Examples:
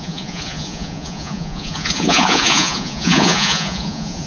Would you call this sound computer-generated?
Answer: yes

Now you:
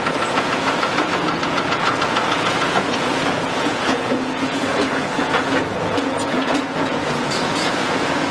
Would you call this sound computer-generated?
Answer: yes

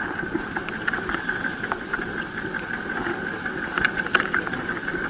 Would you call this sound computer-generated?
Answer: no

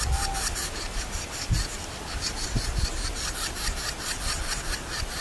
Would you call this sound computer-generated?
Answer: no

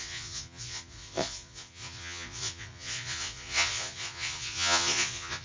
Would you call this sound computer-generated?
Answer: yes